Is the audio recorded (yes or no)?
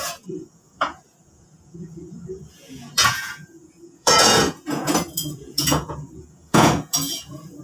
no